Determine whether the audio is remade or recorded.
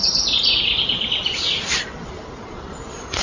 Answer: recorded